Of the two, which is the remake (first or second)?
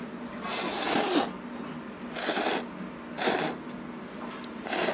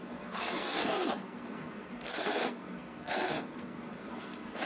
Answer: second